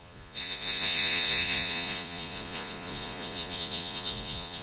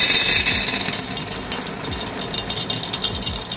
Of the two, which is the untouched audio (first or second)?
second